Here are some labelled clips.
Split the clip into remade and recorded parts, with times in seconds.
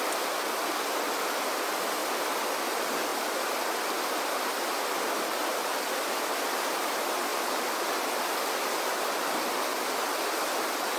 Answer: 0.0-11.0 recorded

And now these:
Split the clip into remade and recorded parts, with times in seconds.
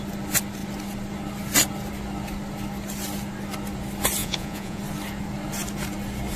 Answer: 0.0-4.2 recorded; 4.2-4.8 remade; 4.8-6.4 recorded